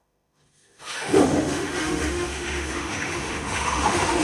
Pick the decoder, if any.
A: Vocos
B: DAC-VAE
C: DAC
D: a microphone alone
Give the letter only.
B